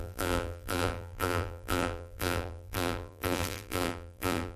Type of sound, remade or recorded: remade